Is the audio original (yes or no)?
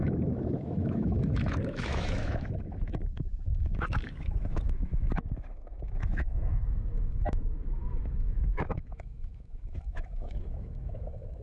no